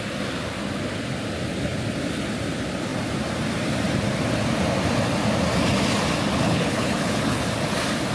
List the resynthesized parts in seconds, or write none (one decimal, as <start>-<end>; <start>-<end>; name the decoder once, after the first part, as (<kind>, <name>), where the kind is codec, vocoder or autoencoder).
6.3-7.4 (codec, HILCodec)

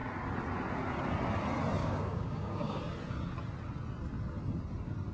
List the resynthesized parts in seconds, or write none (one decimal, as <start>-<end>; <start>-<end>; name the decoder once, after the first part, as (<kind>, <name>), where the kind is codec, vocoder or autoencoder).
1.8-2.8 (codec, DAC)

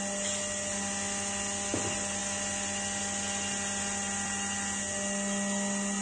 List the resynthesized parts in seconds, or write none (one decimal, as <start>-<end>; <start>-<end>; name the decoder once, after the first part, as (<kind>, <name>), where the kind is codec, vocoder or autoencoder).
none